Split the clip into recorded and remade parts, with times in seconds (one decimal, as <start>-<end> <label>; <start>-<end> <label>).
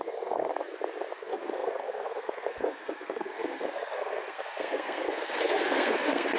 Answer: 0.0-0.5 remade; 0.5-1.2 recorded; 1.2-6.4 remade